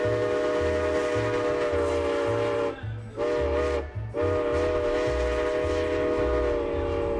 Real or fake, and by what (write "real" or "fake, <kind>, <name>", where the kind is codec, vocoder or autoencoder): real